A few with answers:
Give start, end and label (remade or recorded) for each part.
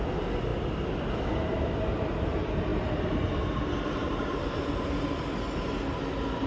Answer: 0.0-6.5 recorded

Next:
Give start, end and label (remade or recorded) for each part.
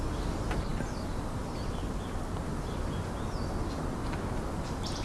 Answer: 0.0-5.0 recorded